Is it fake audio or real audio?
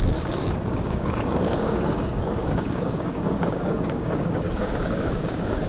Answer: fake